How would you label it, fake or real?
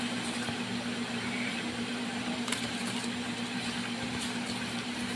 fake